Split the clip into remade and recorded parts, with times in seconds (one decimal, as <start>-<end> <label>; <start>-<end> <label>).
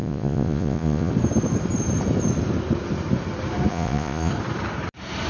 0.0-1.1 remade; 1.1-3.7 recorded; 3.7-4.3 remade; 4.3-5.3 recorded